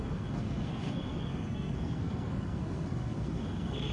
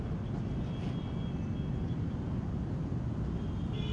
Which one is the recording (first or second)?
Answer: second